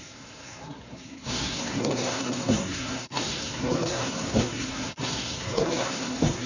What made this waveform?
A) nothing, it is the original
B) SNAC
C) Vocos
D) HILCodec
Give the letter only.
B